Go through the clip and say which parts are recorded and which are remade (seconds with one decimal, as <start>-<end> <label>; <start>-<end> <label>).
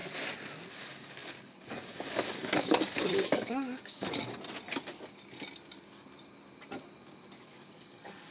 0.0-0.7 recorded; 0.7-4.2 remade; 4.2-7.4 recorded; 7.4-8.3 remade